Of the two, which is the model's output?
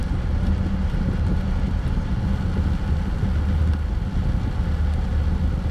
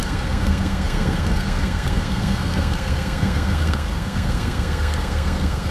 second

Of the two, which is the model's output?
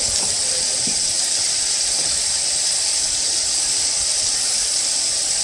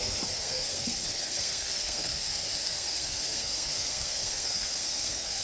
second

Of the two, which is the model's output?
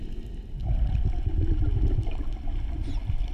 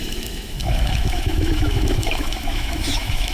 second